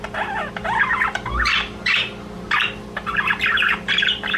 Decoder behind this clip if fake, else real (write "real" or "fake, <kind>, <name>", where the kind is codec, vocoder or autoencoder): fake, vocoder, BigVGAN v2